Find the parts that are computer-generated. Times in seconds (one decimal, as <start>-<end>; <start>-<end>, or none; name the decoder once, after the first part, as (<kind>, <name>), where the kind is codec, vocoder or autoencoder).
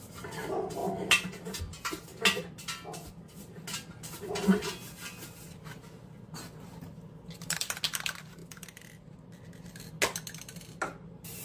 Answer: none